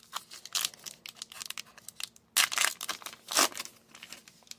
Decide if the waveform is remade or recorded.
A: recorded